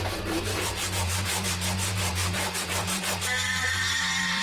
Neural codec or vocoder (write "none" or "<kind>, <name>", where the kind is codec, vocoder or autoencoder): vocoder, BigVGAN v2